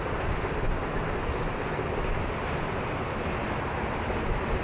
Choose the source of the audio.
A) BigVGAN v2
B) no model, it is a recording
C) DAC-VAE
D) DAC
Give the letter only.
B